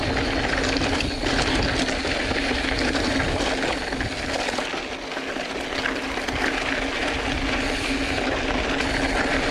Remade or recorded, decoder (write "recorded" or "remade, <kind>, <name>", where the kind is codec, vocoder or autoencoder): recorded